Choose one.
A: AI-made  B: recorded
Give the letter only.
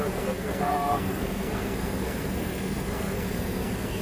A